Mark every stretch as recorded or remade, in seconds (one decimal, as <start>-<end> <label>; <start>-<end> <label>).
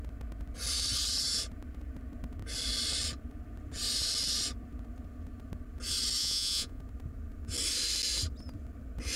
0.0-6.2 recorded; 6.2-6.8 remade; 6.8-9.2 recorded